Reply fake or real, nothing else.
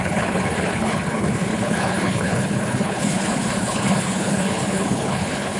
fake